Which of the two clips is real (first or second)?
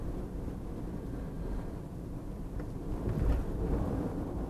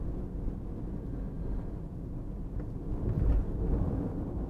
second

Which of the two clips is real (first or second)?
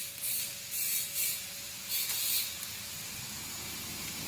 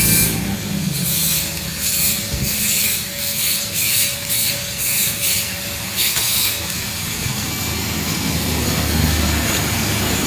first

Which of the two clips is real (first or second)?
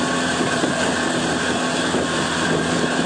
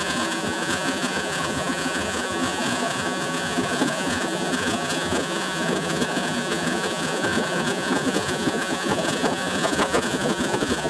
first